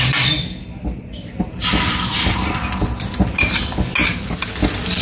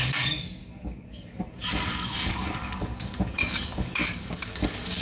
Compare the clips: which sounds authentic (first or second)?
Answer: first